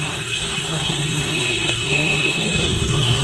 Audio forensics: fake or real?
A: fake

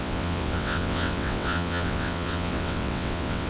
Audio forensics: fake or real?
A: fake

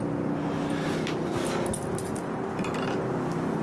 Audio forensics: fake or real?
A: real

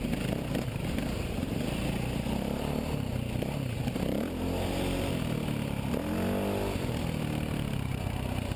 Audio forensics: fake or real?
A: real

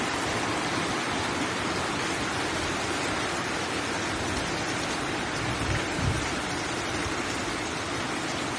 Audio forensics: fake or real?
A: fake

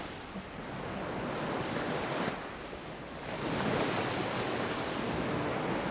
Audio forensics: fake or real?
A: real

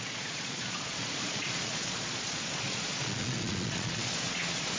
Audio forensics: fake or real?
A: fake